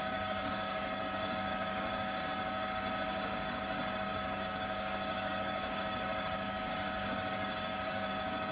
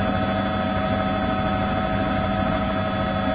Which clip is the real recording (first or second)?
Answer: second